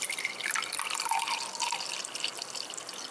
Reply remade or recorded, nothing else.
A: recorded